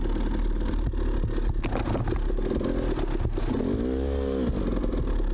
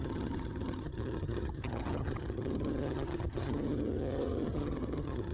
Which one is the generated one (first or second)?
second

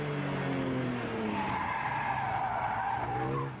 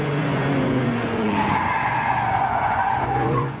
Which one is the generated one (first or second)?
second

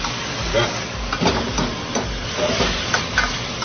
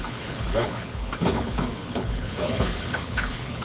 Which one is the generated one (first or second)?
second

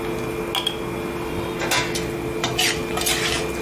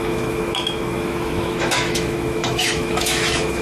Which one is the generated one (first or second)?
second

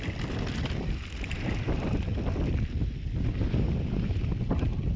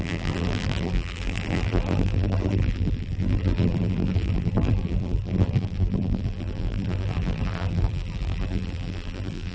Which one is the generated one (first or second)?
second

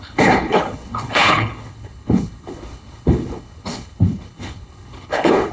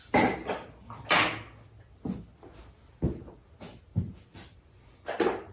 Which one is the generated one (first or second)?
first